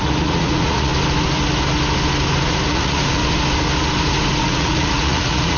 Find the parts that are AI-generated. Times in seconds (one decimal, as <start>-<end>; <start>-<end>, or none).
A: 0.0-0.9; 2.7-3.2; 4.4-5.6